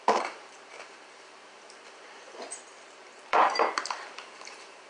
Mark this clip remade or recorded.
remade